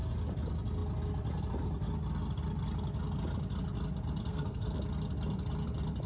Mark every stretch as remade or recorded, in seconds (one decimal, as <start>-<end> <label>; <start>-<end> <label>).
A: 0.0-4.3 recorded; 4.3-4.8 remade; 4.8-6.1 recorded